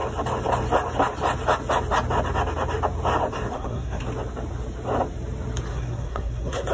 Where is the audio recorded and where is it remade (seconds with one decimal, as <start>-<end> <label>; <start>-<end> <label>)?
0.0-3.5 recorded; 3.5-4.0 remade; 4.0-5.7 recorded; 5.7-6.7 remade